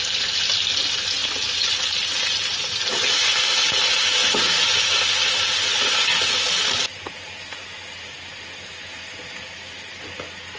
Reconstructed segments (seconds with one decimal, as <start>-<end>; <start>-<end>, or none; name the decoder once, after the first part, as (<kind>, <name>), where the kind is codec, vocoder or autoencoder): none